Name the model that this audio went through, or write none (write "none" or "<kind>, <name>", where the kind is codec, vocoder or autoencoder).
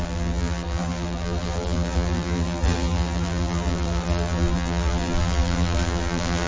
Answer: vocoder, BigVGAN v2